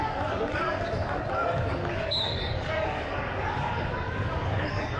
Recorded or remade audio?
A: remade